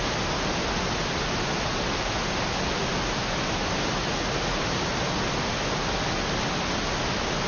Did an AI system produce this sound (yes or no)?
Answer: no